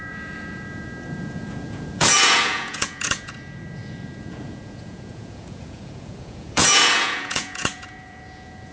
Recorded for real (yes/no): no